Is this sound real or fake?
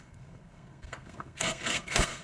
fake